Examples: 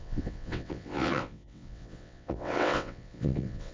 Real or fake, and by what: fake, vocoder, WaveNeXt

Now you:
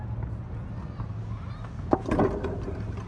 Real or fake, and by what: real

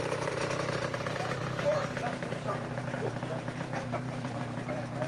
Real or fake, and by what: fake, vocoder, BigVGAN v2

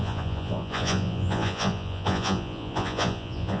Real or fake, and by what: fake, vocoder, Vocos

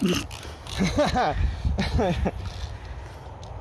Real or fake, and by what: real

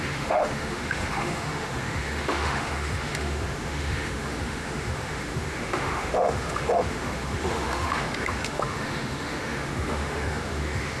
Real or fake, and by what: fake, autoencoder, DAC-VAE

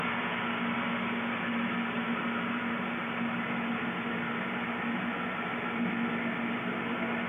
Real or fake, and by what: real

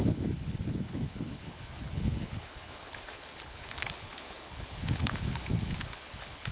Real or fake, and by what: fake, codec, HILCodec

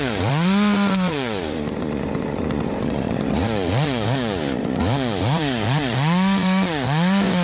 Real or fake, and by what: fake, vocoder, Vocos